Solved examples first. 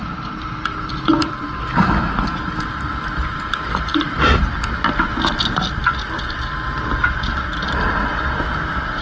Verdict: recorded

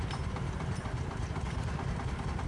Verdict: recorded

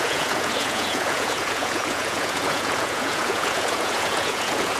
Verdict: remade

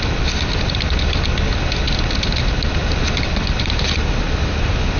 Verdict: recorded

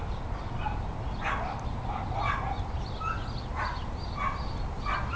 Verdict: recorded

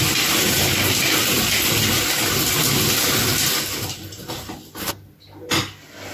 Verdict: recorded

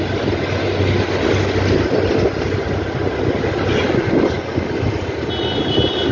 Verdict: recorded